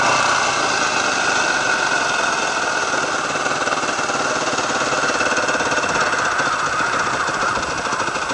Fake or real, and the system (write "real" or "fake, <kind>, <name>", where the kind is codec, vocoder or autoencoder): real